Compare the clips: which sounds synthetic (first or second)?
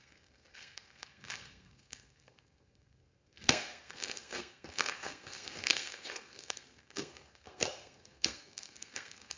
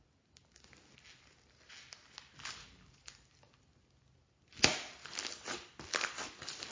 first